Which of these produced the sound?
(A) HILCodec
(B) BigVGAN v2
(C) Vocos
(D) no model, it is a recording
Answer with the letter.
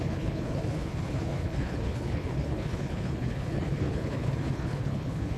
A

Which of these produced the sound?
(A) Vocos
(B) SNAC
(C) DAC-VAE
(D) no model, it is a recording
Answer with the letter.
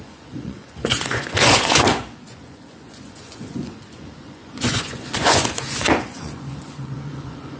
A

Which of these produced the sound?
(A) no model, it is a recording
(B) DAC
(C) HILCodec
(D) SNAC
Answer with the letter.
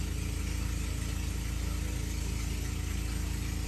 A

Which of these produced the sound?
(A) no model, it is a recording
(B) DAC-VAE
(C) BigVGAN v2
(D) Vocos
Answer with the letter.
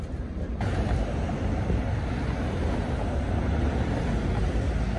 A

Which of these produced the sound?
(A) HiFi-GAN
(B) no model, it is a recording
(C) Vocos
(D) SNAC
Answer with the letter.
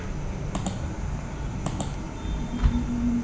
B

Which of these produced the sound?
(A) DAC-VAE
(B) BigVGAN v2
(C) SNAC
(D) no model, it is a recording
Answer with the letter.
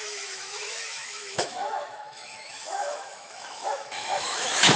A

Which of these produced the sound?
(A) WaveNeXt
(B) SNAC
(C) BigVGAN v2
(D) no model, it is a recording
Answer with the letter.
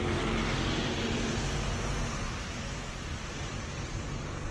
D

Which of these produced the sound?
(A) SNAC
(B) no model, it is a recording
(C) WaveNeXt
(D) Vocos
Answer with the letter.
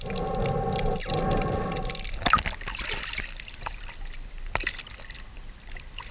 B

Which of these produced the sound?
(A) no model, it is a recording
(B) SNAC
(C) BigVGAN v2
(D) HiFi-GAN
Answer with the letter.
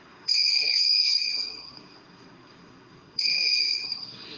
B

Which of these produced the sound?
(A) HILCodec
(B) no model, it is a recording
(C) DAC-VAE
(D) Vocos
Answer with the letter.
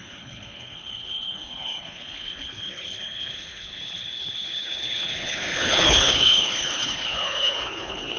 A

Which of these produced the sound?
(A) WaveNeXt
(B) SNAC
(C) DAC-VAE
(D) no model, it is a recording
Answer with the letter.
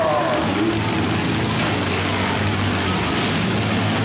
D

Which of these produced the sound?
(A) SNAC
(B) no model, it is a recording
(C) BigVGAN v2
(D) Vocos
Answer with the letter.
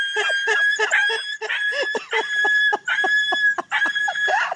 B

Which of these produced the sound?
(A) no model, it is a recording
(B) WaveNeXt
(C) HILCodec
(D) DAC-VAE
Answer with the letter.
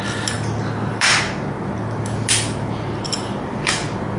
A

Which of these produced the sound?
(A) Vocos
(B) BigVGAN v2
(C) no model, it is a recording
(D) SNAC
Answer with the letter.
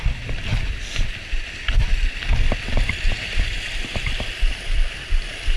C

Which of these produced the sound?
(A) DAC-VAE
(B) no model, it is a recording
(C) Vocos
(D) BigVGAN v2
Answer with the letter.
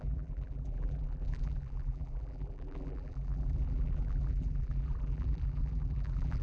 D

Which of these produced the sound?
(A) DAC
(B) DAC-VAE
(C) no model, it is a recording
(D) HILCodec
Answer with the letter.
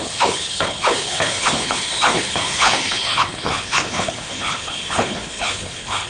D